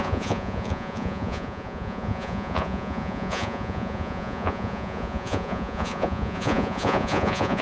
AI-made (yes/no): yes